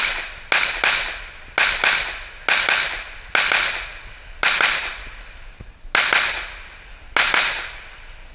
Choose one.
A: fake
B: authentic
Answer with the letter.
B